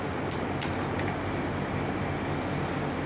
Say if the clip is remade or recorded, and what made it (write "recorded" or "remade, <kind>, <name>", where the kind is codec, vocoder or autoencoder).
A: recorded